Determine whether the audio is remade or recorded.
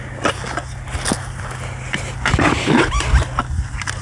recorded